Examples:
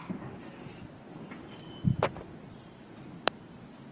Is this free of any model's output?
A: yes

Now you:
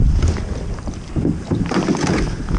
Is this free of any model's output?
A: yes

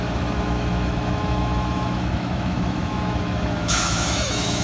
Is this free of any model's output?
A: no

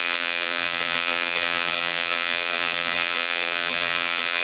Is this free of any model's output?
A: no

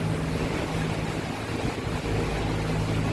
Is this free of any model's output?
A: yes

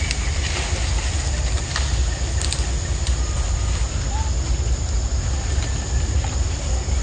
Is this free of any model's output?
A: yes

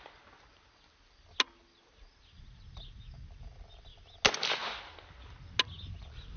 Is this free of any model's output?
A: yes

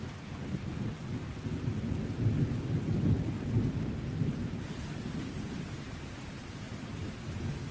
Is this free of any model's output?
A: yes